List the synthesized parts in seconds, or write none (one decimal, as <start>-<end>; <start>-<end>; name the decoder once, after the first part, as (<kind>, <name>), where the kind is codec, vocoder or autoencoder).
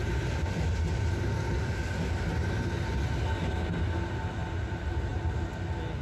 none